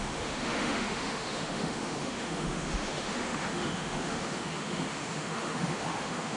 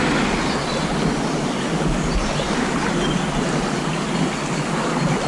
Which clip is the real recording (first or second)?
second